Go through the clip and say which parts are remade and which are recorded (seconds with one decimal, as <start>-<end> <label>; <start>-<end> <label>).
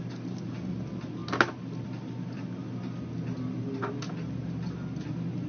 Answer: 0.0-5.5 recorded